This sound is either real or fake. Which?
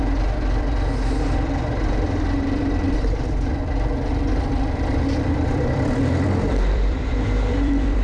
fake